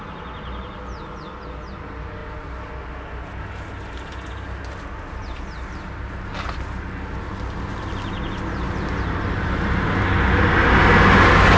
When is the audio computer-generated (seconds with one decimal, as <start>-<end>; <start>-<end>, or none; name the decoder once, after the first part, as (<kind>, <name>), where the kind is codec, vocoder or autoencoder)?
none